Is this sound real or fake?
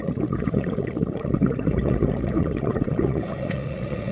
fake